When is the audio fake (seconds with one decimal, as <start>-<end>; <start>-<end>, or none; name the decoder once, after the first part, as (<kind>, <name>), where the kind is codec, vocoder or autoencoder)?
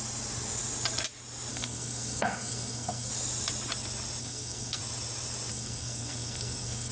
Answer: 1.5-3.1 (codec, SNAC); 4.2-4.8; 5.5-6.9